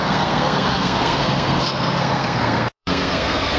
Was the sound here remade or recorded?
remade